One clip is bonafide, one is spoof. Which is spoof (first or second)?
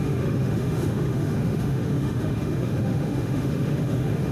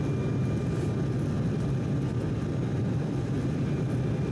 first